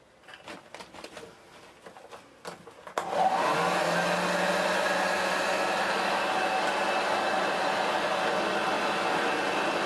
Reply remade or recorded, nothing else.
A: recorded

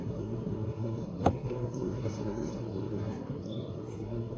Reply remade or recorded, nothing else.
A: remade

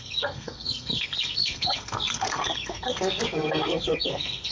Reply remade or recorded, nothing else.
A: remade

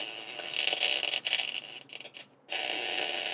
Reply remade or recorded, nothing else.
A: recorded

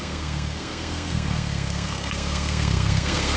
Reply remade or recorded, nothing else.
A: remade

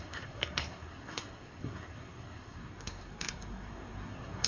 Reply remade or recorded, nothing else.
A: remade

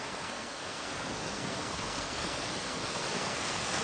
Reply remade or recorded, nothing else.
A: remade